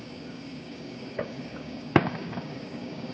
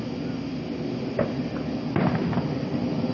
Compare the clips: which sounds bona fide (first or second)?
second